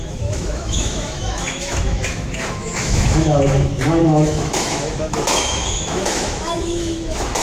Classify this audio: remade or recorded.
remade